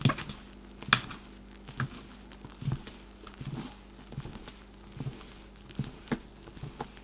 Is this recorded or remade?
recorded